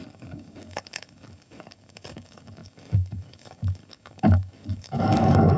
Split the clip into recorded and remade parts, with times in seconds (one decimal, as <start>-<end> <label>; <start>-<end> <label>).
0.0-5.6 remade